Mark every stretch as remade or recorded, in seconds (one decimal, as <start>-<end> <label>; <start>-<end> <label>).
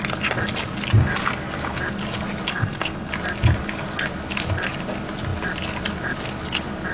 0.0-2.5 recorded; 2.5-3.1 remade; 3.1-6.9 recorded